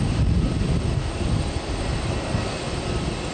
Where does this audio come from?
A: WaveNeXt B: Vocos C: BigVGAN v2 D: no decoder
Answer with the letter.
D